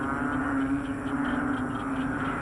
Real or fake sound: real